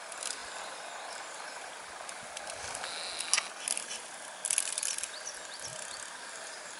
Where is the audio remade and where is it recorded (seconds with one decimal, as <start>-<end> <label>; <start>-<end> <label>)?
0.0-6.8 recorded